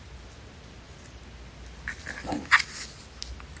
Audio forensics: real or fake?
real